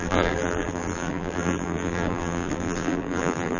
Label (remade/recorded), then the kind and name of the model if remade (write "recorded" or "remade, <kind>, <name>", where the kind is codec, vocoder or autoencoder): remade, vocoder, BigVGAN v2